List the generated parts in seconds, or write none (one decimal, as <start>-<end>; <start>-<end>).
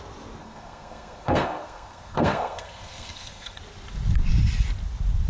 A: 0.4-3.6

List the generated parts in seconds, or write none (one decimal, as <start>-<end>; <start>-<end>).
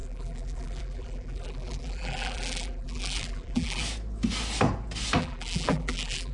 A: 0.0-3.8; 5.2-6.3